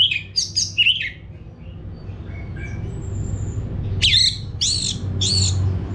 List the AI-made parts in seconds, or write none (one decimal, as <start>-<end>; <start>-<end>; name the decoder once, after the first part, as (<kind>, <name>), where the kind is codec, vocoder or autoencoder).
none